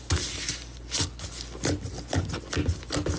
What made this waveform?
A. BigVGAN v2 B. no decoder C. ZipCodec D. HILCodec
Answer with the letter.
B